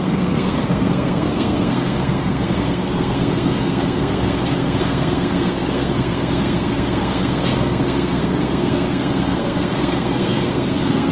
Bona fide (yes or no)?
no